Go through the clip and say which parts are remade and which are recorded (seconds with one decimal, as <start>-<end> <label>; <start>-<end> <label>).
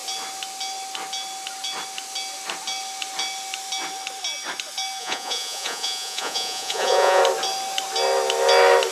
0.0-5.0 recorded; 5.0-7.2 remade; 7.2-8.9 recorded